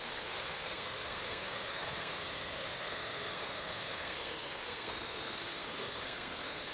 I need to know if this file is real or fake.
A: fake